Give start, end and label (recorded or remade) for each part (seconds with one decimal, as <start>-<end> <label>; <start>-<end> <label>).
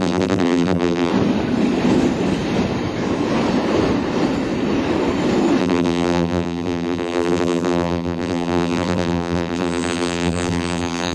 0.0-1.1 remade; 1.1-5.6 recorded; 5.6-11.1 remade